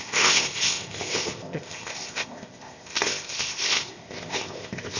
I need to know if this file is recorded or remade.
remade